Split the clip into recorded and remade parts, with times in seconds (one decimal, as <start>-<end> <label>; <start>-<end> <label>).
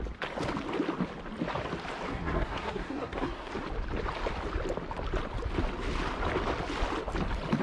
0.0-2.1 recorded; 2.1-3.5 remade; 3.5-7.6 recorded